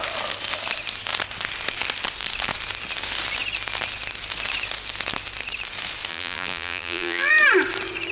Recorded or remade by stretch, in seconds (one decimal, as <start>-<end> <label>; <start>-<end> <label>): 0.0-6.1 recorded; 6.1-7.3 remade; 7.3-8.1 recorded